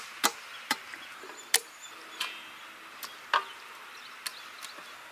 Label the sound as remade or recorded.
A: recorded